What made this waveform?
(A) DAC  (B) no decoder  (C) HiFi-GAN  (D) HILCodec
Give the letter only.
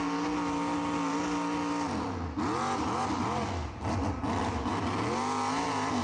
B